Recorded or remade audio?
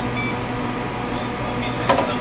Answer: recorded